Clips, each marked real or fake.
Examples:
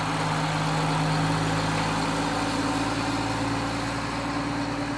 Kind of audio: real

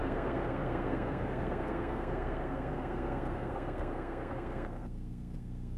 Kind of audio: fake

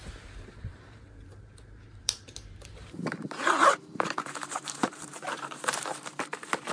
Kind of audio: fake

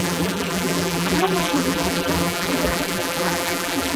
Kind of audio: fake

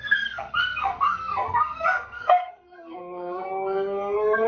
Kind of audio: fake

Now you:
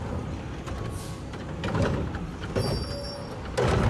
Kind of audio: real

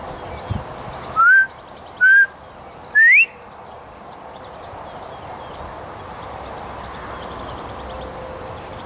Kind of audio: real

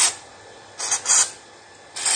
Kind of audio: real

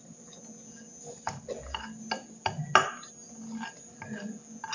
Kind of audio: real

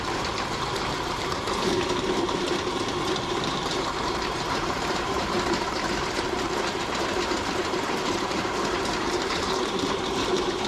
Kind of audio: fake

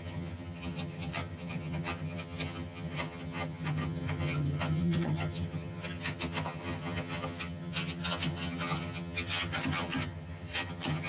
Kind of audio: fake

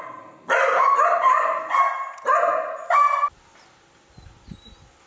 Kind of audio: real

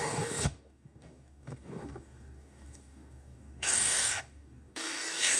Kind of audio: fake